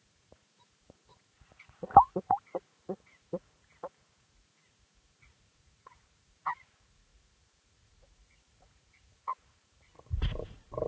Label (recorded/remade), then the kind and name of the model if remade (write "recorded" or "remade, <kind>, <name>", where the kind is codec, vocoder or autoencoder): remade, vocoder, Vocos